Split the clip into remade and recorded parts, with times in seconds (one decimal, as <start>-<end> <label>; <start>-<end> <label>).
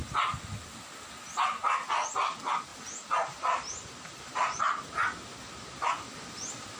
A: 0.0-2.7 recorded; 2.7-4.6 remade; 4.6-6.8 recorded